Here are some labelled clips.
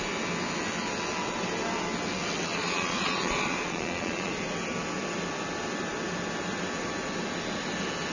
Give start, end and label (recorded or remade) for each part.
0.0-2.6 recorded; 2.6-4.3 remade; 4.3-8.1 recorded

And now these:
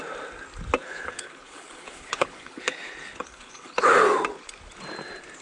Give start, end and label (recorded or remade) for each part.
0.0-0.8 recorded; 0.8-3.9 remade; 3.9-5.4 recorded

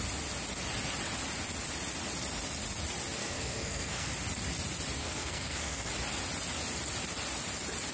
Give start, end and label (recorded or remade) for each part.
0.0-3.2 recorded; 3.2-4.1 remade; 4.1-5.0 recorded; 5.0-5.9 remade; 5.9-7.9 recorded